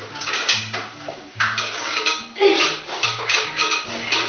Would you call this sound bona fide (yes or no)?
no